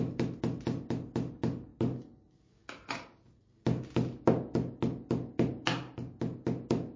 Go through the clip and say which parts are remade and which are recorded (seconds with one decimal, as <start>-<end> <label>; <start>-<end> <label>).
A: 0.0-7.0 recorded